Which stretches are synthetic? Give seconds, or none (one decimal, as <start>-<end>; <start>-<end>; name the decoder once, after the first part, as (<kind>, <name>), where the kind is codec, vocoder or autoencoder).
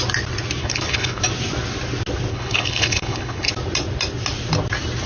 0.6-1.2 (codec, HILCodec); 2.3-3.5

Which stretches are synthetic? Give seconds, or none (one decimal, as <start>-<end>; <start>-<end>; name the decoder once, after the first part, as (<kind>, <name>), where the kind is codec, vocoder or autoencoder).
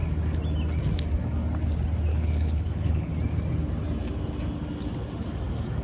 2.1-3.1 (codec, HILCodec)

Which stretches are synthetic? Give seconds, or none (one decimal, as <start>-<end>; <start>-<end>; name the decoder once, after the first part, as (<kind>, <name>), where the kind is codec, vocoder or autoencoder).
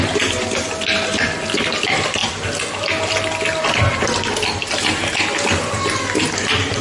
none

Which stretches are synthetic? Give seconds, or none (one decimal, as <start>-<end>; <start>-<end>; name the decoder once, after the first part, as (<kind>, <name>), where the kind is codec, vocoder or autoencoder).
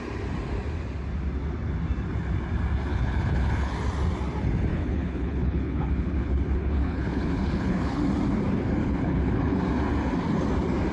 2.9-3.7 (codec, HILCodec); 4.7-8.0; 8.8-9.6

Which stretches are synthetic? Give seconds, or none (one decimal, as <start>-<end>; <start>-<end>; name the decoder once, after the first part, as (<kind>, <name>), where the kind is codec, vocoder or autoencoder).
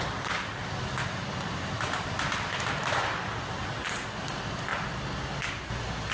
none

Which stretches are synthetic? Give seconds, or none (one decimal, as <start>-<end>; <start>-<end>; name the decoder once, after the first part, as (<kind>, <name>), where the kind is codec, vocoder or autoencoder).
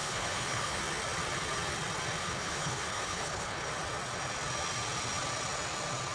0.0-0.8 (codec, HILCodec); 2.2-3.7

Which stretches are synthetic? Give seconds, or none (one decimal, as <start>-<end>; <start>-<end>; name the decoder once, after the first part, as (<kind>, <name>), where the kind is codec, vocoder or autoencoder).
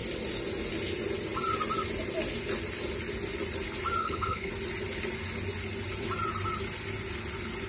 4.0-4.5 (codec, HILCodec)